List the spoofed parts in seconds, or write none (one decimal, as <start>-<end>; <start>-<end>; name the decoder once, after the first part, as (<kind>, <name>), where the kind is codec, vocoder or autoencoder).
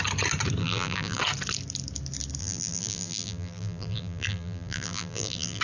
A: 0.6-1.2 (vocoder, BigVGAN v2); 2.4-5.6